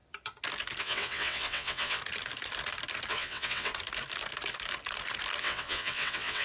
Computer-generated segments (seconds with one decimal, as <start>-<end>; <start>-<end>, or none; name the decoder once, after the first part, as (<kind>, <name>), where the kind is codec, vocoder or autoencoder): 0.8-2.0 (vocoder, WaveNeXt); 3.1-3.7; 5.4-6.4